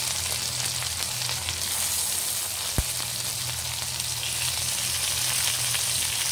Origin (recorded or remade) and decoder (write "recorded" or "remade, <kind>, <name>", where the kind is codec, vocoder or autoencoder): recorded